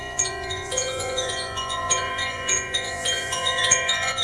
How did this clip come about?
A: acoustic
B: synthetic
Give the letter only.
B